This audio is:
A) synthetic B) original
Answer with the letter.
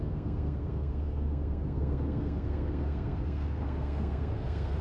A